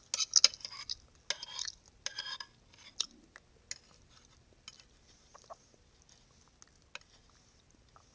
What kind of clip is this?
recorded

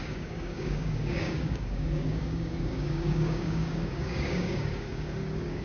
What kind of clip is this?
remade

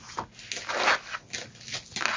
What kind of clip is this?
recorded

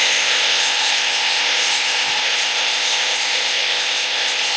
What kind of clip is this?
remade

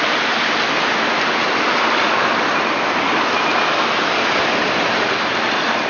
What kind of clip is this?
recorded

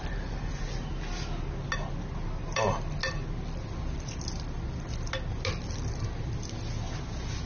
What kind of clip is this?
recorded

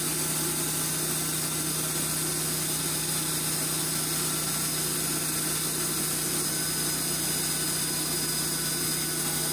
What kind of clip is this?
recorded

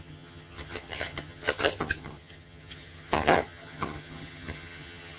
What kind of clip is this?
remade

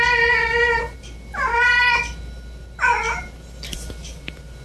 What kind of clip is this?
recorded